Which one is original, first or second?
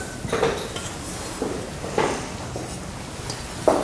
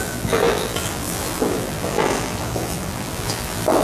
first